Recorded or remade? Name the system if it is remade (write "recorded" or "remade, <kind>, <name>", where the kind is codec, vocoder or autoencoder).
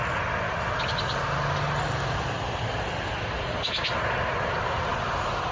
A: recorded